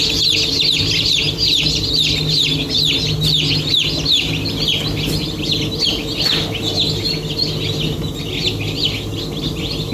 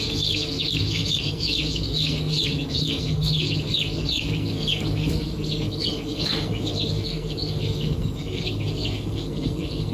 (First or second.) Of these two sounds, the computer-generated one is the second